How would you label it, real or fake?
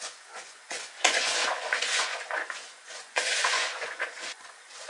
fake